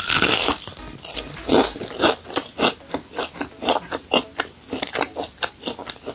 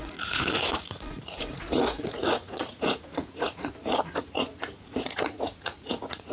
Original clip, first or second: first